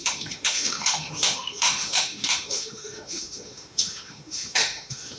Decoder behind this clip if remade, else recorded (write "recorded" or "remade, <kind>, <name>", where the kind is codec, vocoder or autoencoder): remade, autoencoder, DAC-VAE